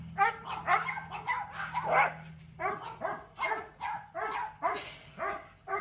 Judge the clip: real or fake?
real